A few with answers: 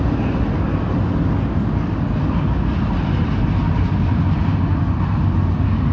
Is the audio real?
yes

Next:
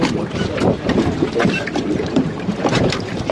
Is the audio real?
no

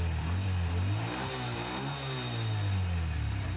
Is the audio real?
yes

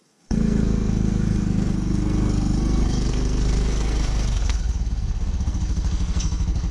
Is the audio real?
no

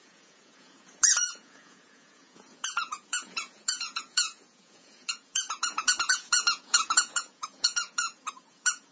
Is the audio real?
no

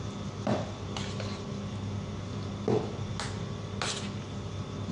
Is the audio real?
yes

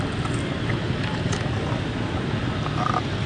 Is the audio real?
yes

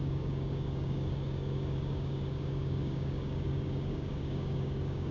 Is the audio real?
no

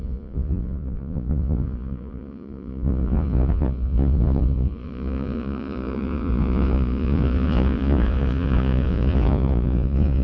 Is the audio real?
no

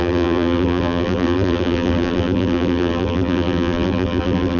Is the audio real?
no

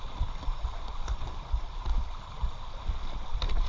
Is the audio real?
yes